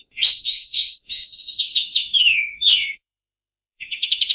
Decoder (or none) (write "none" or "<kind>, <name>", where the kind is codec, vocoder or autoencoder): autoencoder, DAC-VAE